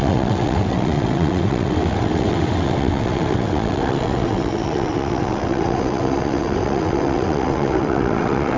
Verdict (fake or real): fake